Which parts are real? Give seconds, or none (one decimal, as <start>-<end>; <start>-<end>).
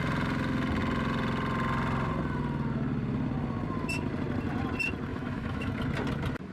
0.0-5.1; 5.7-6.5